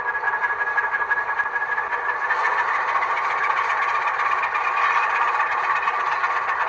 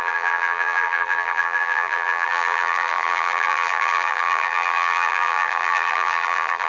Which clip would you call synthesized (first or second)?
second